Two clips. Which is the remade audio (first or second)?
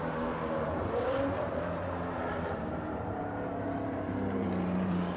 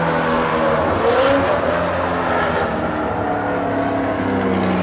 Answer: first